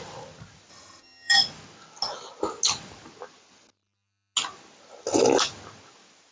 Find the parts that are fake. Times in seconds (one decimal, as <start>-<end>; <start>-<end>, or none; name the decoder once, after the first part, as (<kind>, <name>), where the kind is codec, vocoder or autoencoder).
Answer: 0.7-1.3 (vocoder, HiFi-GAN)